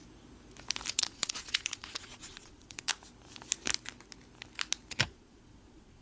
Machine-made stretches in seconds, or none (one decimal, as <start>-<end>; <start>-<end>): 0.9-2.9; 4.9-6.0